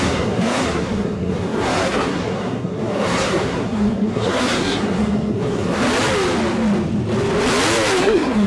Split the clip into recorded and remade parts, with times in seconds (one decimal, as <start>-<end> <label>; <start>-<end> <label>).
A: 0.0-5.8 remade; 5.8-8.0 recorded; 8.0-8.5 remade